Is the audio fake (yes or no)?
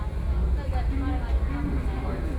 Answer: no